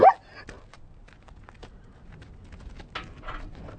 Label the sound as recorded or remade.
recorded